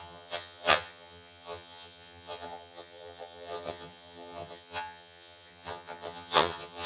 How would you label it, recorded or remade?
remade